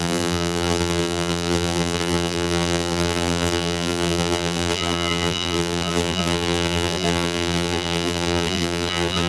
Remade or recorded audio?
remade